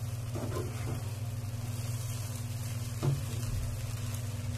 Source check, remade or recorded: recorded